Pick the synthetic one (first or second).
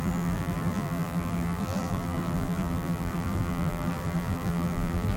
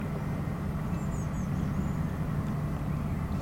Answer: first